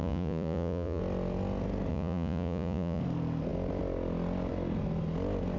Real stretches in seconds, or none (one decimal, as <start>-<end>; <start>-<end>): 1.0-1.9; 3.0-5.6